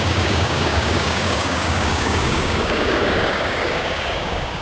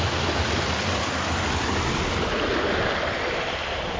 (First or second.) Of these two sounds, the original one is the second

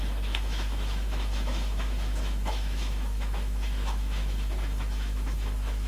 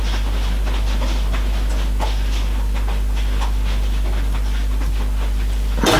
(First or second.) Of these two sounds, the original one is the second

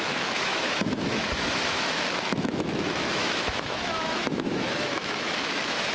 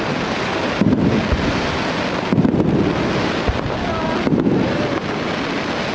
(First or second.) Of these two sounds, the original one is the second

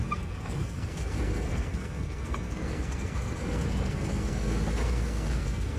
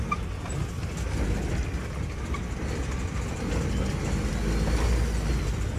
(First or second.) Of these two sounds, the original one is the second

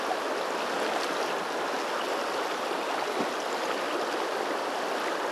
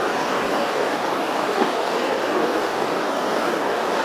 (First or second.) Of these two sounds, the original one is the first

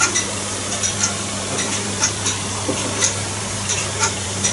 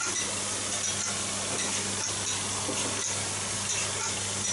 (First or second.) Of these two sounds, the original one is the second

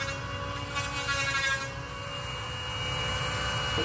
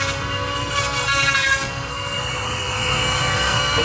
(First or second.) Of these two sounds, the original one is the first